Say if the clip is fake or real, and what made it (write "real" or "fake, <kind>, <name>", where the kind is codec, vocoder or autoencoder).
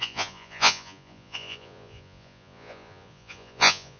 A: fake, vocoder, Vocos